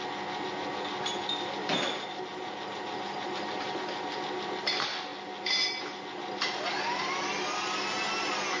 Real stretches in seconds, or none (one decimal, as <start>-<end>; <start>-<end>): 0.0-1.6; 3.8-8.6